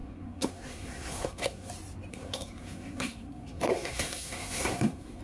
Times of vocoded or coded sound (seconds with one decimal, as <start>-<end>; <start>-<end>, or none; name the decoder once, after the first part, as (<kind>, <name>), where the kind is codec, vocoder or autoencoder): 0.0-1.7 (codec, SNAC); 2.1-5.2

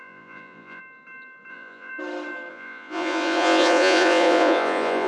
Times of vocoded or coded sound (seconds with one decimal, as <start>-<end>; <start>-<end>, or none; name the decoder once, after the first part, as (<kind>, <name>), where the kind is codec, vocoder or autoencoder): 0.0-0.8 (vocoder, Vocos); 1.5-1.9; 2.5-5.1

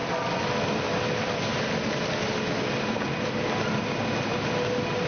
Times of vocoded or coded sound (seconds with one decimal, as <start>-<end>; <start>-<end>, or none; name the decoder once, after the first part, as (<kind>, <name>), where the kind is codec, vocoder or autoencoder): none

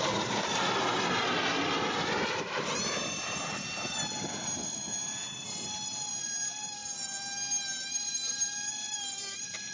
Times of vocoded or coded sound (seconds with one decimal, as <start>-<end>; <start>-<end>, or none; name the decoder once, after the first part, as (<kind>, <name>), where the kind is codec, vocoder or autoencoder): 0.0-6.8 (vocoder, BigVGAN v2); 8.7-9.7

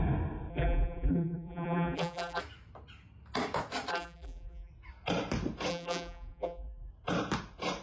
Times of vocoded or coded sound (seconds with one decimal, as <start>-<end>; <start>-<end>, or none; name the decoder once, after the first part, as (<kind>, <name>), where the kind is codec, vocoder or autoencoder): 0.5-2.4 (vocoder, BigVGAN v2); 3.9-4.7; 5.7-6.9